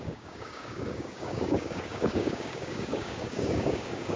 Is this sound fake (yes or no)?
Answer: yes